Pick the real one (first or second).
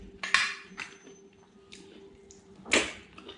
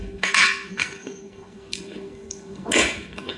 first